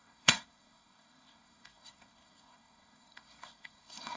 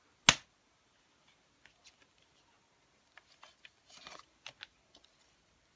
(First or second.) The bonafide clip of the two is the second